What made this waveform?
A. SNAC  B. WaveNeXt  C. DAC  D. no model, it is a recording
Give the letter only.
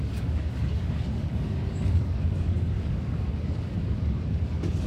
C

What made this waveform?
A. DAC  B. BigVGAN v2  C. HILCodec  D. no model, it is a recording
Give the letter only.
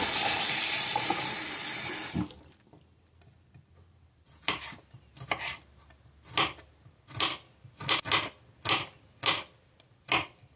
D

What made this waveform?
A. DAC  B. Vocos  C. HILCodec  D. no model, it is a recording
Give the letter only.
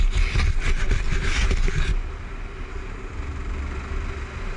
D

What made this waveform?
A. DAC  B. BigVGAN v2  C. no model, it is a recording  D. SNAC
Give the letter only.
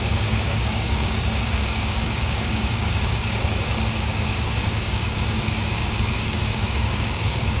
A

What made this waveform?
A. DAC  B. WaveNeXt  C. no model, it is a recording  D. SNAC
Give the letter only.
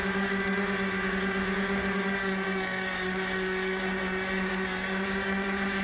A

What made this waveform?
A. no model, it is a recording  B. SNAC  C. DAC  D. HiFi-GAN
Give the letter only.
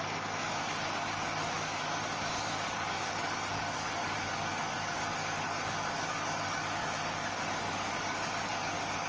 C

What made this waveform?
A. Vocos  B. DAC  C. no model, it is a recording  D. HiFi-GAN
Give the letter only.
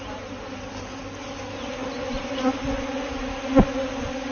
C